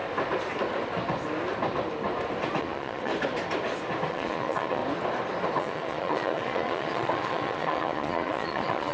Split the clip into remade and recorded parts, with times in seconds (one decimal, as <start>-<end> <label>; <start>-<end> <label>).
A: 0.0-2.6 recorded; 2.6-3.1 remade; 3.1-4.1 recorded; 4.1-4.8 remade; 4.8-5.6 recorded; 5.6-8.9 remade